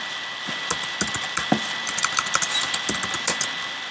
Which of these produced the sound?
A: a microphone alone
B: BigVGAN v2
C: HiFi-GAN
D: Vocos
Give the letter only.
A